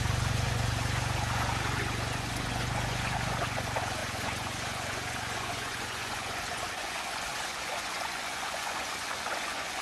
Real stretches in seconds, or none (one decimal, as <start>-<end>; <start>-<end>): none